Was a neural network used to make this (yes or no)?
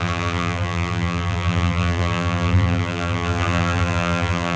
yes